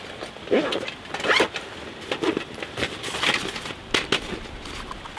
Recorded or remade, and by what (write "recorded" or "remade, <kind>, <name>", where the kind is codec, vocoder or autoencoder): recorded